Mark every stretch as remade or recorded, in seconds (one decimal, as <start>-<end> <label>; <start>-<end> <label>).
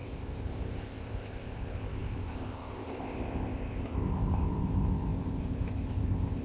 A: 0.0-6.4 remade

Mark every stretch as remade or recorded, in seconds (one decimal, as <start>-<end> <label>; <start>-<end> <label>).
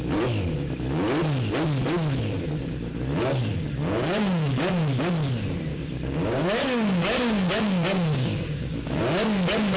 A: 0.0-3.5 recorded; 3.5-4.9 remade; 4.9-5.7 recorded; 5.7-9.0 remade; 9.0-9.8 recorded